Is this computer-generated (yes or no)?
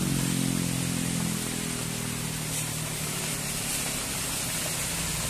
no